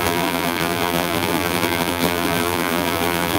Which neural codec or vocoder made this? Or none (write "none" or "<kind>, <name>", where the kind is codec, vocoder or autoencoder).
vocoder, BigVGAN v2